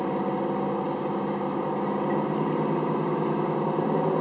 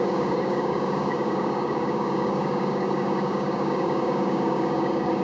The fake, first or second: second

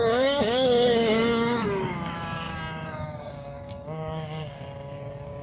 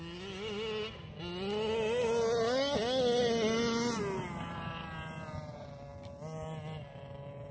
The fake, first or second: first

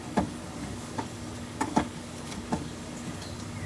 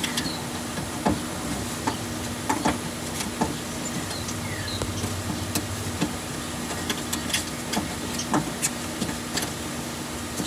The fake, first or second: first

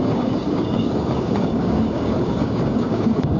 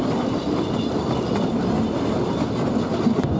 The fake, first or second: first